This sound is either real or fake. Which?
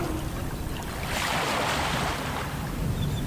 real